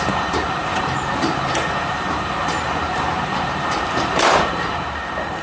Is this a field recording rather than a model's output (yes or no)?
no